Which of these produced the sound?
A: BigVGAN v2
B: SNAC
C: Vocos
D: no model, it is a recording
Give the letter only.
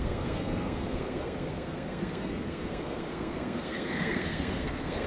B